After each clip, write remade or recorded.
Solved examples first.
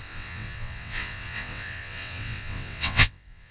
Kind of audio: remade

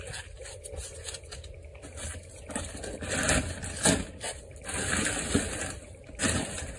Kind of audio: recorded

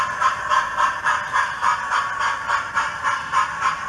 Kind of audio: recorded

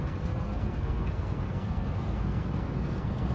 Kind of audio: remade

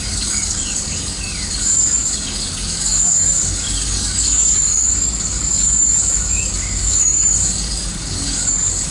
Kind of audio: remade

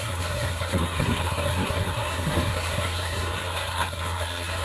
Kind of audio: remade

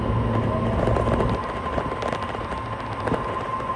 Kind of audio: recorded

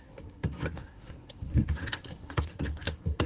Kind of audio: remade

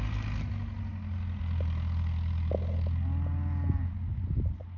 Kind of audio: recorded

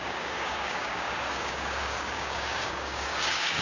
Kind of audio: remade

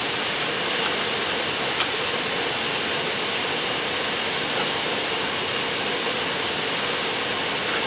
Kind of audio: recorded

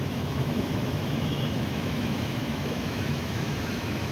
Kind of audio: remade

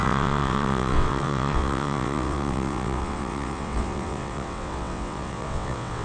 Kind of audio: remade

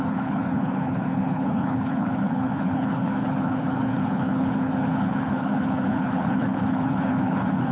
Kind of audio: remade